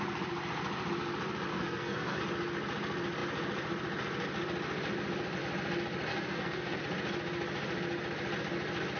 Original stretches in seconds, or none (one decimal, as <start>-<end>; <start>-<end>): 0.0-1.5; 2.2-6.1; 6.8-9.0